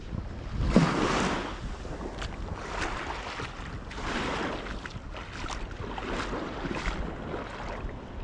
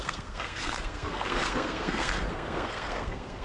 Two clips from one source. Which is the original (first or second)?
first